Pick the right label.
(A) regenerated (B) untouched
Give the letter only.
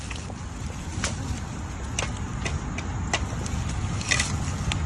B